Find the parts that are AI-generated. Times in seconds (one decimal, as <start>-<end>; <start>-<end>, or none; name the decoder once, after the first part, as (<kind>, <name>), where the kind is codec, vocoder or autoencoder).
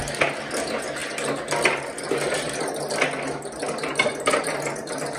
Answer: none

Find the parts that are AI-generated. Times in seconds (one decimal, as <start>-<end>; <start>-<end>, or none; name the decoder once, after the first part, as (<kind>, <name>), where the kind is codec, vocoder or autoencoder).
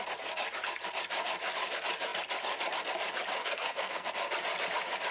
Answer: 3.4-4.1 (codec, SNAC)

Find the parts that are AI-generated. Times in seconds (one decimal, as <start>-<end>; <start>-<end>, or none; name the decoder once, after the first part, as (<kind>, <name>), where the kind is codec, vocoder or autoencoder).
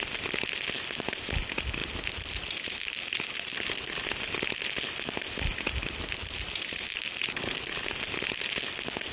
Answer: none